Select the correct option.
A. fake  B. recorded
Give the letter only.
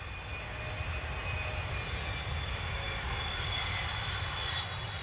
B